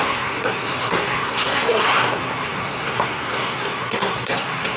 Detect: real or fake fake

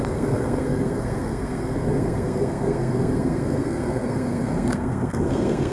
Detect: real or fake fake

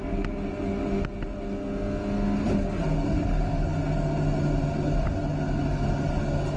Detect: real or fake real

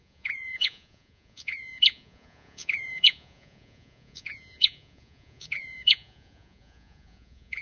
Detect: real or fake fake